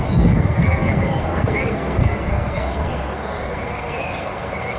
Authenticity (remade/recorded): remade